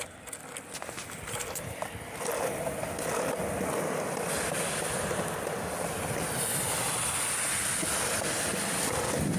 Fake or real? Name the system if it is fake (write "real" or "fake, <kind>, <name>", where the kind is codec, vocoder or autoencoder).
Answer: real